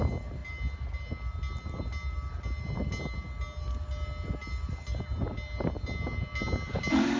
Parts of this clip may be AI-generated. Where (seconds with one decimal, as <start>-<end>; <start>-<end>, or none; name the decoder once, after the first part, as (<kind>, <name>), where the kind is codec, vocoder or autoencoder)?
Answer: none